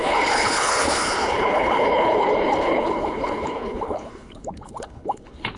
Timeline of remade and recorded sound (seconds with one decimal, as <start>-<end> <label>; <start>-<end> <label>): 0.0-5.6 remade